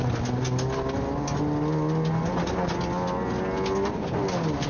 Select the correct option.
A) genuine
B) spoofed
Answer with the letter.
A